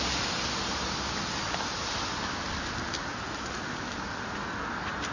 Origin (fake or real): real